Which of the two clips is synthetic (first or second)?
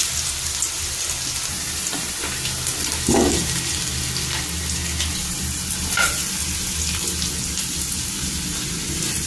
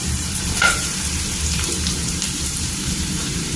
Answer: second